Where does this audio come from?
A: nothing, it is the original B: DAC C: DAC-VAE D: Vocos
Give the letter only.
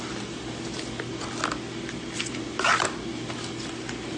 A